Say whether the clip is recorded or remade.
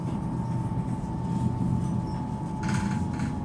recorded